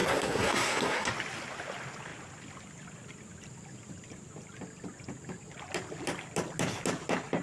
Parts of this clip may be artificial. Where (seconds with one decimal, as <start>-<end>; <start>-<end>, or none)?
0.0-1.1